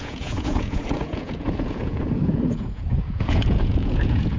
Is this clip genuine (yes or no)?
no